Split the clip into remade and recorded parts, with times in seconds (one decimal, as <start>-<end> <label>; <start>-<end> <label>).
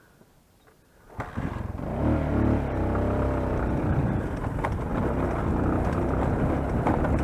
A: 0.0-7.2 recorded